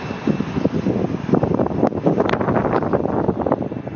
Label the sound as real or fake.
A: real